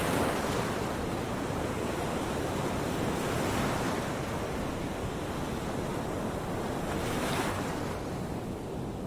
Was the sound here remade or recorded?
recorded